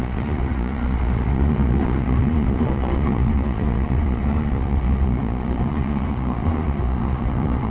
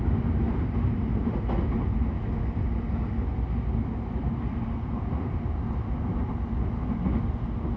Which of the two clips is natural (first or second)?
second